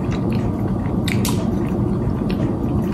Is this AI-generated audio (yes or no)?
no